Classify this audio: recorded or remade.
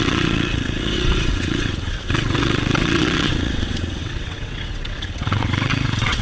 remade